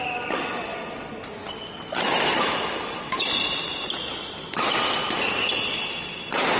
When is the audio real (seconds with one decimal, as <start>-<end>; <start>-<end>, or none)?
0.0-6.6